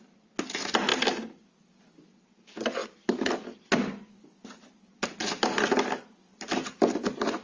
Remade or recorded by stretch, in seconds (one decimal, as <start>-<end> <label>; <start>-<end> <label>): 0.0-7.4 recorded